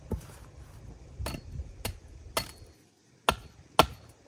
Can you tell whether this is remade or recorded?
recorded